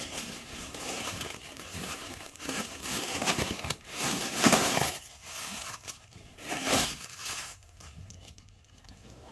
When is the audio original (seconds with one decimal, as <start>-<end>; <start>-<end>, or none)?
none